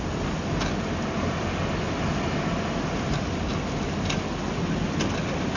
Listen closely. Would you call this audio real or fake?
real